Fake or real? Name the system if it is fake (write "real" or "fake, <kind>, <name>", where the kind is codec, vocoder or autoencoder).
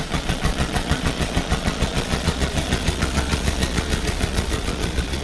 fake, vocoder, Vocos